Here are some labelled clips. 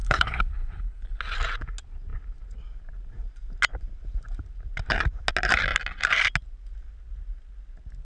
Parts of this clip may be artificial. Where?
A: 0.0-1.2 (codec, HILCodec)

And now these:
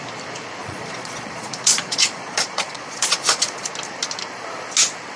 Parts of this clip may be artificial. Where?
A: 0.6-3.7 (vocoder, Vocos)

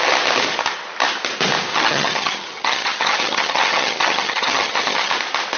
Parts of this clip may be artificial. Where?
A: 1.7-5.1 (vocoder, HiFi-GAN)